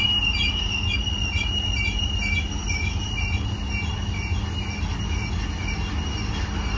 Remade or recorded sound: recorded